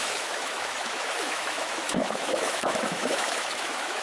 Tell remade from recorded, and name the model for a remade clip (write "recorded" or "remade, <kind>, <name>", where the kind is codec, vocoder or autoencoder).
remade, autoencoder, DAC-VAE